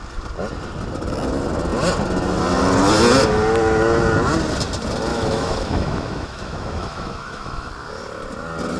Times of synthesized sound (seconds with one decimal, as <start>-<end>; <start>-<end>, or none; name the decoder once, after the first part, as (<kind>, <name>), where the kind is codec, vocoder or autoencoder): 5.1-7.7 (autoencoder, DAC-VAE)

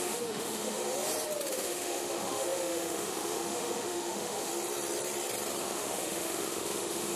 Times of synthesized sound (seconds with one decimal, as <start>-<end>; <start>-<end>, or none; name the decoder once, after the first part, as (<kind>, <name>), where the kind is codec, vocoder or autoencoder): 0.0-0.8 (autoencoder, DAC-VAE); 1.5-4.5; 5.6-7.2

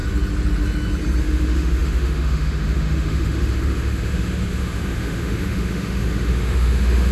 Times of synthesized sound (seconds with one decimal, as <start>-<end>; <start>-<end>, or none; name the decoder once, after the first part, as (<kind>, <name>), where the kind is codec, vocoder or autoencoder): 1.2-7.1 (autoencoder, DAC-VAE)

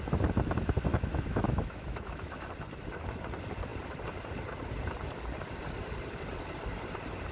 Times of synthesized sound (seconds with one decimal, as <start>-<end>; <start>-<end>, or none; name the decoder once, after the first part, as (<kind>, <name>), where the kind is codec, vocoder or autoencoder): 0.9-2.5 (autoencoder, DAC-VAE)